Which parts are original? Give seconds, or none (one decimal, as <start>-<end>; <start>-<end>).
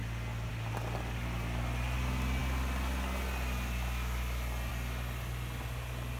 0.0-6.2